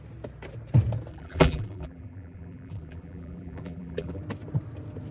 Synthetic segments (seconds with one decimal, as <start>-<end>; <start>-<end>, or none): 1.1-4.2